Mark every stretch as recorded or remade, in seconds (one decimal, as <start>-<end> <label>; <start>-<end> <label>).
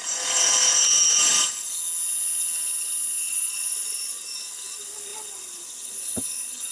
0.0-1.3 remade; 1.3-3.3 recorded; 3.3-6.7 remade